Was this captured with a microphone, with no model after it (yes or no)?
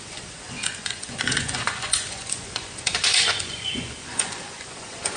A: no